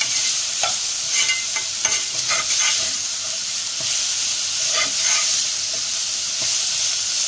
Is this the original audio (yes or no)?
yes